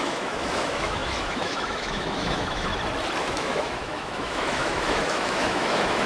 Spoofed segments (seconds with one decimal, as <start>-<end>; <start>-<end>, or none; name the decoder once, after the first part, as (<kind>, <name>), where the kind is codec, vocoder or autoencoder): 0.0-2.7 (autoencoder, DAC-VAE); 3.2-6.1